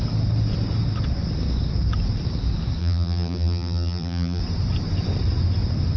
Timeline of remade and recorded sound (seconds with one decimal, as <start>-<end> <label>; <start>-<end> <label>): 0.0-2.8 recorded; 2.8-4.4 remade; 4.4-6.0 recorded